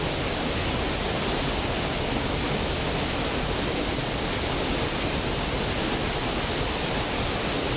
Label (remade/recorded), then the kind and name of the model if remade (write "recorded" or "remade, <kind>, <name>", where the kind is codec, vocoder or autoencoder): recorded